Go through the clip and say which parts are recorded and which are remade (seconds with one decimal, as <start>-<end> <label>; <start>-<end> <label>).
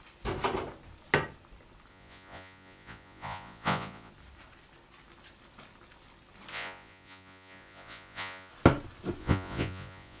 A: 0.0-1.9 recorded; 1.9-4.1 remade; 4.1-6.5 recorded; 6.5-8.5 remade; 8.5-9.2 recorded; 9.2-10.2 remade